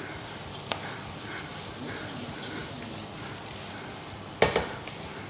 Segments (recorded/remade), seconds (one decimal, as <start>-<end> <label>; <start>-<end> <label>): 0.0-5.3 recorded